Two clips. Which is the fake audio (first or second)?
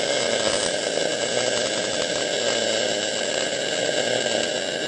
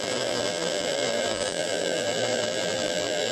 second